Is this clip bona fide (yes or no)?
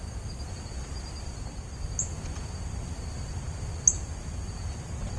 yes